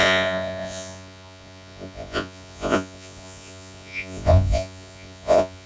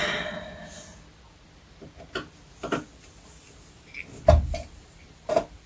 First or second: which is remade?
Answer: first